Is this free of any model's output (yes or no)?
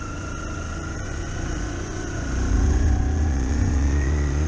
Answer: no